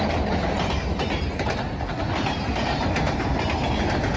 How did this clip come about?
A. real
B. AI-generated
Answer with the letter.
A